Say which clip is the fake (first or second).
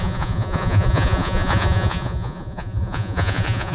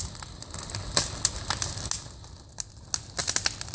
first